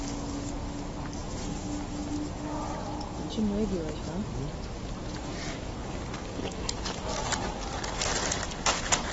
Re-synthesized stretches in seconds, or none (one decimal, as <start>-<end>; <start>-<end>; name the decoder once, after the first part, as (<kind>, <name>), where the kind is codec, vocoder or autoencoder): 1.4-2.1 (codec, DAC); 5.3-7.8